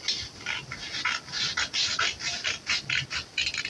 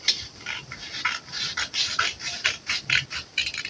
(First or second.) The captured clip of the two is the first